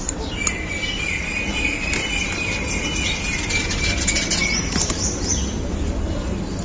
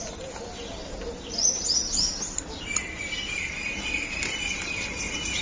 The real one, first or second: first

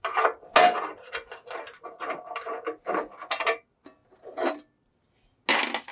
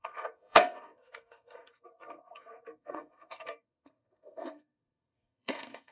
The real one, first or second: first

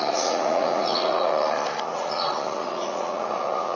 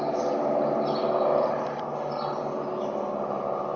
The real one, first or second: second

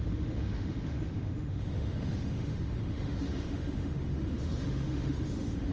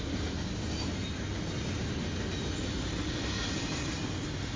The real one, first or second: second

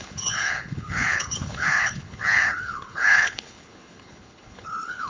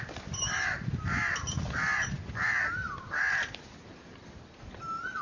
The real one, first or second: second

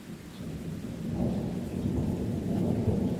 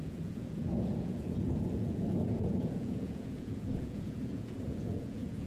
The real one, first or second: first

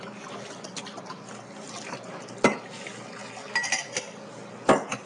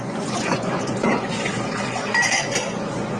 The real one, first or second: first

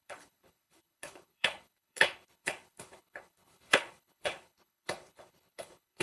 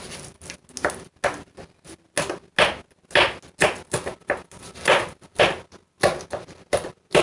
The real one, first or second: second